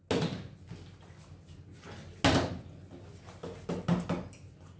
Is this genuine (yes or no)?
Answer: yes